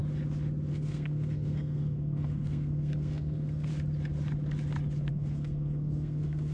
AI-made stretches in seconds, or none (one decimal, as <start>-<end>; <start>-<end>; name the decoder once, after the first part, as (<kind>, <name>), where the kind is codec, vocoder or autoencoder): 0.7-3.7 (codec, SNAC); 5.1-6.5